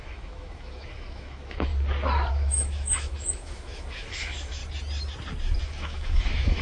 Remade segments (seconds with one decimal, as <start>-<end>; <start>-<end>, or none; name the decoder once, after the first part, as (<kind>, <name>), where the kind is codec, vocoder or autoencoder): 0.0-1.7 (autoencoder, DAC-VAE); 2.3-4.6; 5.6-6.6